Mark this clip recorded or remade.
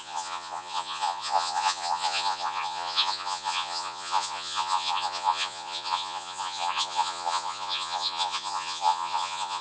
remade